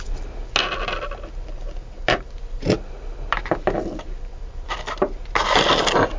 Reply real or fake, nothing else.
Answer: real